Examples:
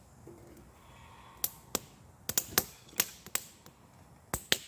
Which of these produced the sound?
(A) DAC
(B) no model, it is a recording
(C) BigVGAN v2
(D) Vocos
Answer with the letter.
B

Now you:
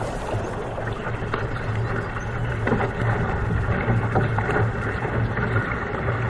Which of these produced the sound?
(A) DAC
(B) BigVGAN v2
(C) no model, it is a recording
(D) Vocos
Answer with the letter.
C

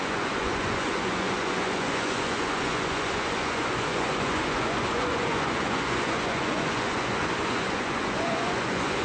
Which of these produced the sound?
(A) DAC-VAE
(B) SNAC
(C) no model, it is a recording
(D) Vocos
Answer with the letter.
D